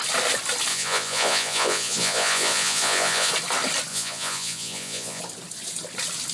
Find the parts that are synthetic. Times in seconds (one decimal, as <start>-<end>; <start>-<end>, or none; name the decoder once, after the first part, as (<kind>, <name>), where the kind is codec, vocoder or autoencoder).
0.7-3.3 (vocoder, Vocos); 3.9-5.2